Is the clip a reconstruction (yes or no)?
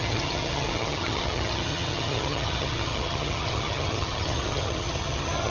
yes